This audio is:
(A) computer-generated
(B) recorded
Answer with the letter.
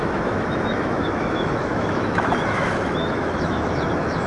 A